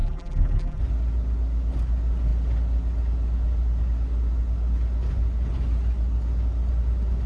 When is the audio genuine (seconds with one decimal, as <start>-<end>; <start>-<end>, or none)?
0.8-7.3